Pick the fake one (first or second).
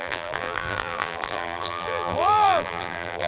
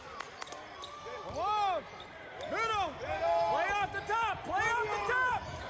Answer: first